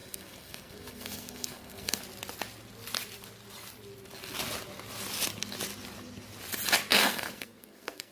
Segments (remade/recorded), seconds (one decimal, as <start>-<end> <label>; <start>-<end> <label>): 0.0-2.0 remade; 2.0-6.9 recorded; 6.9-8.1 remade